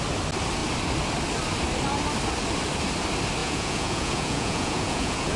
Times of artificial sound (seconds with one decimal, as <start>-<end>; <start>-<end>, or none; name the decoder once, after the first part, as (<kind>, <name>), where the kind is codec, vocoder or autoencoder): 3.4-5.4 (vocoder, Vocos)